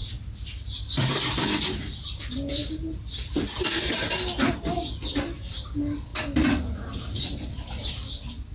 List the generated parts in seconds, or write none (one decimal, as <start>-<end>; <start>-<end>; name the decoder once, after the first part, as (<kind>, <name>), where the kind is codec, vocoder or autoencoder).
2.6-4.1 (vocoder, BigVGAN v2)